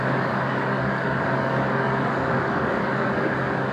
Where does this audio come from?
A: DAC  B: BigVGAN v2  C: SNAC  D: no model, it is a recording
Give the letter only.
A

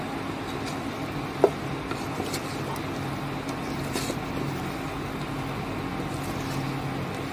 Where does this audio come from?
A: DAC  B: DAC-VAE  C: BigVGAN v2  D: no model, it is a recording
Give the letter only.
D